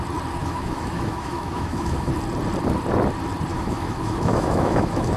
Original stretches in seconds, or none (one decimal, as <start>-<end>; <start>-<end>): 0.0-0.4; 2.1-3.5